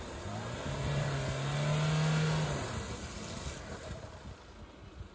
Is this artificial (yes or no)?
no